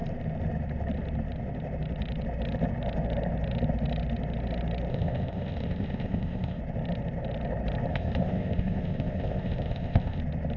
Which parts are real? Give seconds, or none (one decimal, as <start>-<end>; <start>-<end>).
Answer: 0.0-4.9; 6.6-7.9; 10.2-10.6